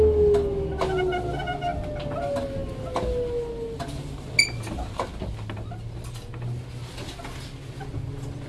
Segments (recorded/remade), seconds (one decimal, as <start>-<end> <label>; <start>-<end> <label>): 0.0-8.5 recorded